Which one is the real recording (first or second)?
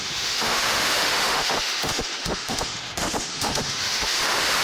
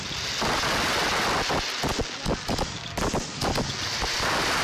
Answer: second